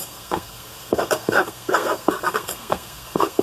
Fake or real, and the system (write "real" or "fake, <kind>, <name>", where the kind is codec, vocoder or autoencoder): fake, codec, SNAC